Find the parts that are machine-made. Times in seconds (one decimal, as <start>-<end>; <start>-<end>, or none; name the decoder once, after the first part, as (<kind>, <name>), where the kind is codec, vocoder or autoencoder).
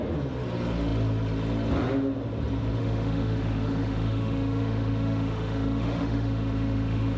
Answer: 2.8-7.2 (autoencoder, DAC-VAE)